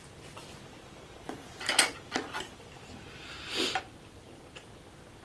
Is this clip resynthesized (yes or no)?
no